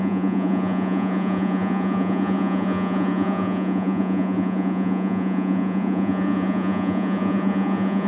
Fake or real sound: fake